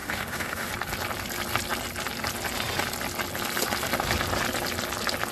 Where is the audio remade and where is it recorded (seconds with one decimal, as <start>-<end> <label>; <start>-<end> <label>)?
0.0-0.7 remade; 0.7-5.3 recorded